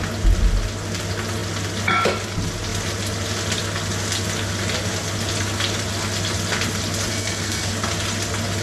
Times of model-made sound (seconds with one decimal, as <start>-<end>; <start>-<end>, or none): 7.1-7.7